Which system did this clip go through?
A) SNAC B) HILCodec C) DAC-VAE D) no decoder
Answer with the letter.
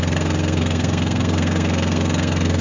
A